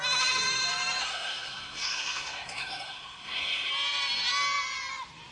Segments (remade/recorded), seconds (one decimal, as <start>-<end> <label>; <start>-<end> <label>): 0.0-1.0 recorded; 1.0-3.7 remade; 3.7-5.3 recorded